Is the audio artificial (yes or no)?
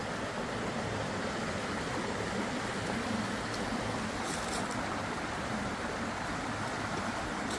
no